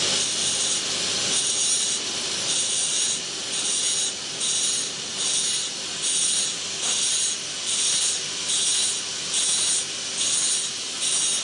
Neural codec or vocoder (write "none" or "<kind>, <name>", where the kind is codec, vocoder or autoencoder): none